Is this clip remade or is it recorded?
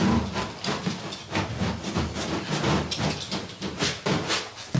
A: recorded